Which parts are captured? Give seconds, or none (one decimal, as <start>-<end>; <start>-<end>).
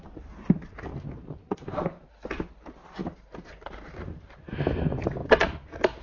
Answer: 0.0-0.9; 2.1-3.0; 4.6-5.2